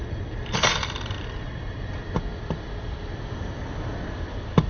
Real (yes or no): yes